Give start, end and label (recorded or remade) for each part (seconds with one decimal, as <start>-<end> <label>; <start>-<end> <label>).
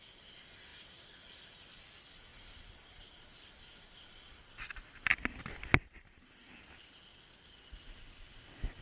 0.0-2.3 recorded; 2.3-4.0 remade; 4.0-8.8 recorded